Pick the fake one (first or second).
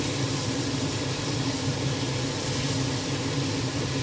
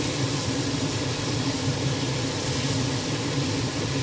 second